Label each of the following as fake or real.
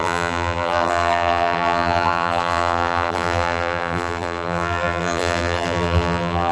fake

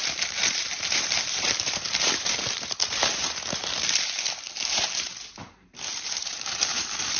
fake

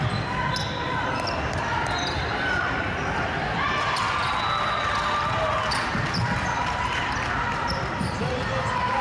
fake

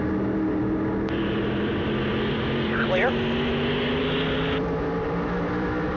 fake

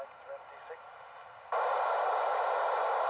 fake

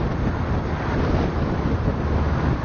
fake